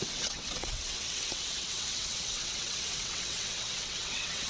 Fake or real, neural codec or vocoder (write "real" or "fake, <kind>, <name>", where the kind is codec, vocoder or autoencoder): fake, vocoder, WaveNeXt